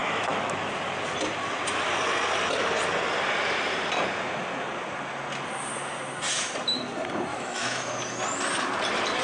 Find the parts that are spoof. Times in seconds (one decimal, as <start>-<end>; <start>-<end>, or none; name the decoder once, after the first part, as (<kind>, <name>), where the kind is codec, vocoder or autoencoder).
0.0-0.7 (autoencoder, DAC-VAE); 7.3-7.9